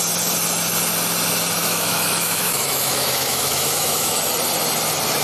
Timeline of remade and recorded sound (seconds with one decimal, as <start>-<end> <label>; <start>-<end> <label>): 0.0-1.6 recorded; 1.6-4.2 remade; 4.2-5.2 recorded